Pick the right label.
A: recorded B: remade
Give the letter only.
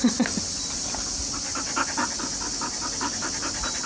A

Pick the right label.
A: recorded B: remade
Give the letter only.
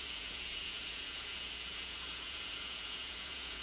B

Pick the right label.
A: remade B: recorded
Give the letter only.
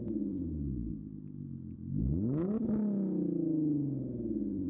B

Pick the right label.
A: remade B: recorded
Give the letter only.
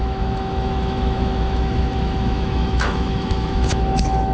A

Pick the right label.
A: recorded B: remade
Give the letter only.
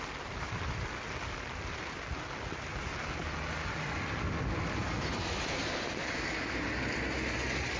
A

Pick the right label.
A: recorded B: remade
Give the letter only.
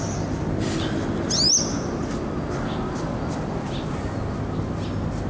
A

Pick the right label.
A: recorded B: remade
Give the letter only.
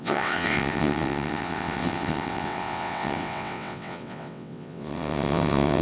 B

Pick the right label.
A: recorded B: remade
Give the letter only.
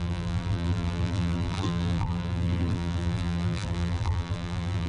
B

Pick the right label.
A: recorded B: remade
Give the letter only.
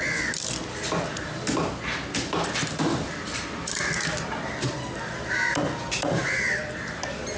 A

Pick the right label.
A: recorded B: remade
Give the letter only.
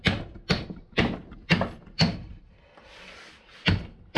A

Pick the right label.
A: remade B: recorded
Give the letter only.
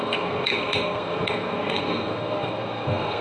A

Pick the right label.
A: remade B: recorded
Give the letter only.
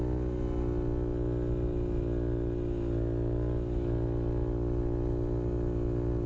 B